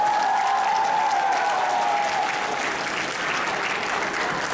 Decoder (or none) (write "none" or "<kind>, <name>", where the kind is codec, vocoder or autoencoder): none